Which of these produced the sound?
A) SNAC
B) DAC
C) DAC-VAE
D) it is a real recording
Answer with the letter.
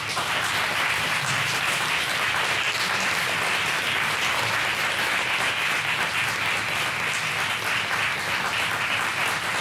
D